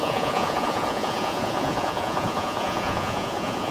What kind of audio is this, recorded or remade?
remade